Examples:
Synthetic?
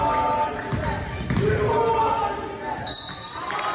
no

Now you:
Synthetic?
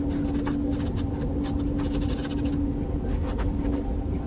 no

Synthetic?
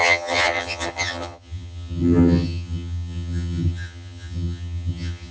yes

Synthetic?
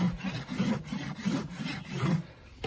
no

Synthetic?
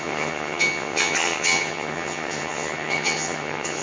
yes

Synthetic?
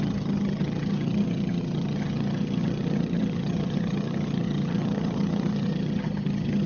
yes